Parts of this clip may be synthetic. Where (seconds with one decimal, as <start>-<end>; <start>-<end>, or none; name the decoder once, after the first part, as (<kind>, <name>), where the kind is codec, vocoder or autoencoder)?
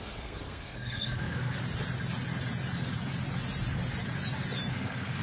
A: 0.0-1.6 (codec, SNAC); 4.7-5.2